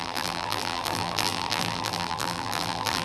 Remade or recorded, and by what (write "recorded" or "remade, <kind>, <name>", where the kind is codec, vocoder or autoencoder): remade, vocoder, BigVGAN v2